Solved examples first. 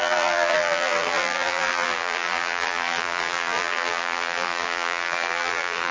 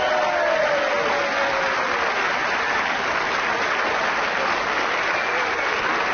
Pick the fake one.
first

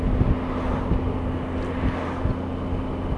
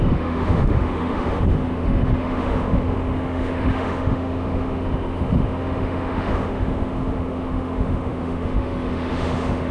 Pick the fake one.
second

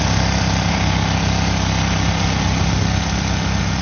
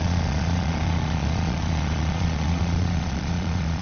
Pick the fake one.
second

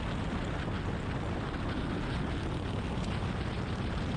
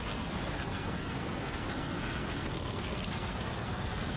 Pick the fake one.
second